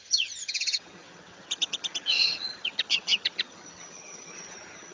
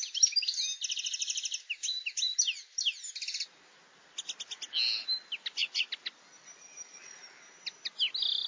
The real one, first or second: second